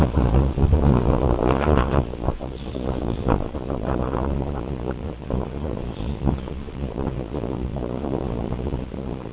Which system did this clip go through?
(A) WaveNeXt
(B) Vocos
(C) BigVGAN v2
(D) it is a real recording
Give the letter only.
B